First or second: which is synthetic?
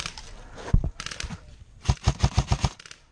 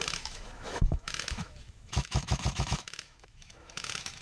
second